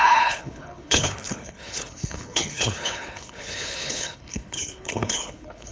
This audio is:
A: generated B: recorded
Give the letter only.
A